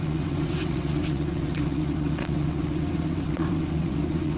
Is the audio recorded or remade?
remade